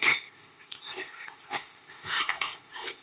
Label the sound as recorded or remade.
remade